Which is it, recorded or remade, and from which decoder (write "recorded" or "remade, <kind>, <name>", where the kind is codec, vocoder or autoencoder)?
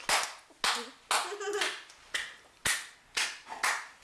recorded